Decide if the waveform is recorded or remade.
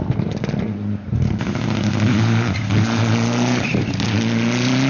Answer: recorded